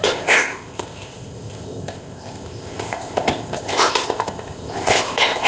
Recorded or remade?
remade